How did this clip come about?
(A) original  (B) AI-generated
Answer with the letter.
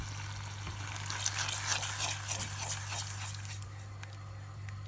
A